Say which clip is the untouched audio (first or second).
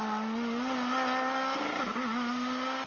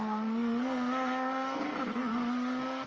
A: first